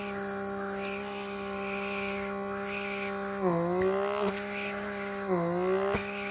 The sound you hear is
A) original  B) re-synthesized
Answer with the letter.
A